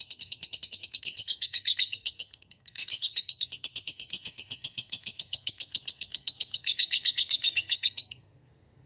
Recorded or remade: remade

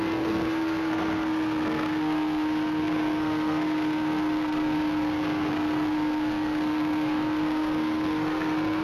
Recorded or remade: remade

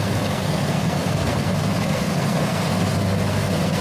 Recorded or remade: remade